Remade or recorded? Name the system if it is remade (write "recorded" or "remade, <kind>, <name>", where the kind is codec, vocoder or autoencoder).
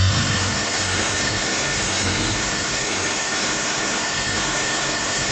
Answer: remade, codec, SNAC